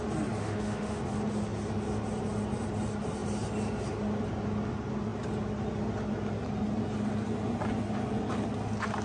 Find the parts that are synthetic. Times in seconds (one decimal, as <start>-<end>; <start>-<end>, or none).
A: 0.4-1.0